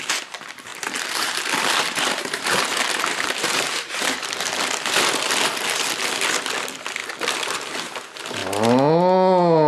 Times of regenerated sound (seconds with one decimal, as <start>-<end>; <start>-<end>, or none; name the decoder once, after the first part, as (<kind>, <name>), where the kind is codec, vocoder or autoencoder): 0.7-4.3 (vocoder, BigVGAN v2)